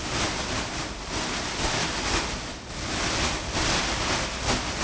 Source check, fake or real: real